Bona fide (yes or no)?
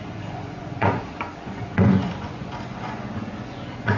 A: no